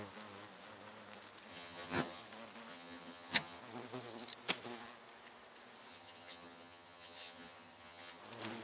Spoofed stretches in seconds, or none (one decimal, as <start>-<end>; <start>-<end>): 1.5-2.2; 2.7-3.6; 5.9-8.2